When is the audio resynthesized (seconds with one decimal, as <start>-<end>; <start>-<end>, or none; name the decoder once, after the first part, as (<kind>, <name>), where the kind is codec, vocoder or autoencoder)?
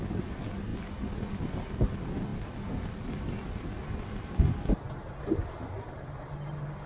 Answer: none